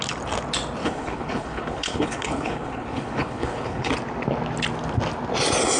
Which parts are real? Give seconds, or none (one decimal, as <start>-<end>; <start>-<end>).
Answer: 0.0-0.8; 3.9-5.8